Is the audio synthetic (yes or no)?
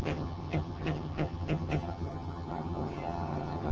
yes